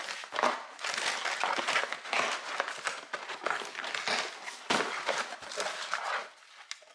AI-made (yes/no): no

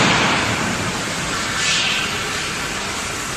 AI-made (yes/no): no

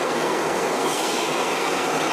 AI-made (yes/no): yes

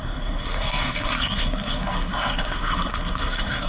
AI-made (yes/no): yes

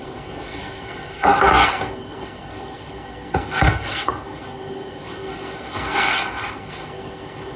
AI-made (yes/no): yes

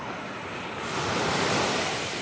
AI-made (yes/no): no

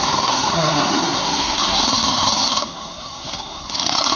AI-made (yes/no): yes